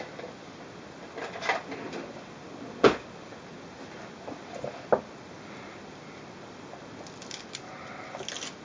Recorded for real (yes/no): yes